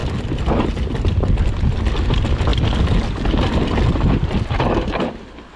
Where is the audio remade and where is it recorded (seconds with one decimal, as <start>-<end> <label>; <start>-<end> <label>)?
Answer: 0.0-5.6 recorded